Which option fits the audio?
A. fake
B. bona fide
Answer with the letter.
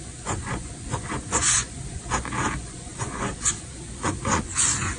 A